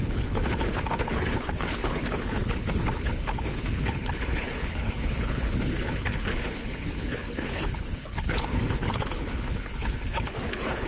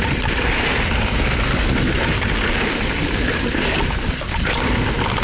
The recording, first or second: second